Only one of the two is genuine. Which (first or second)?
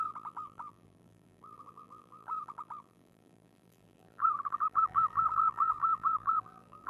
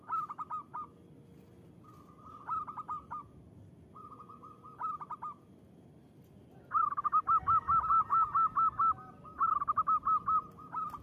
second